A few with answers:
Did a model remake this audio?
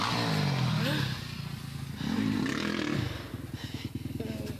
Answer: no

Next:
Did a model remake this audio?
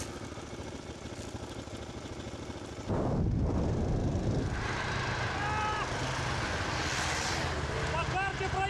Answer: no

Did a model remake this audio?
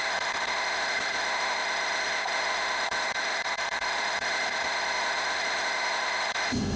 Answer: yes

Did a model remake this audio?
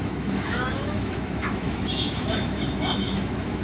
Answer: yes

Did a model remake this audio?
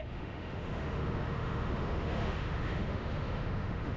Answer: yes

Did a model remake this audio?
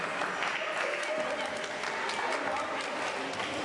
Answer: no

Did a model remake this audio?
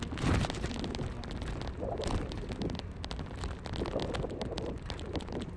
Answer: no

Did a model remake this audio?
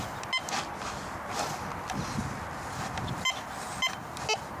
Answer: no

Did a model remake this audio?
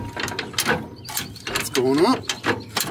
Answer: no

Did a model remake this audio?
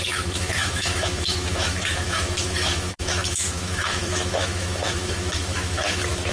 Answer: yes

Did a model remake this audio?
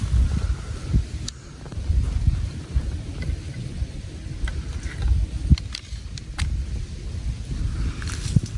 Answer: no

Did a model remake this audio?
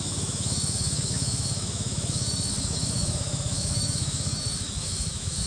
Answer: yes